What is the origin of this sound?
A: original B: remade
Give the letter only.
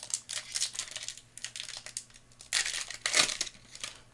A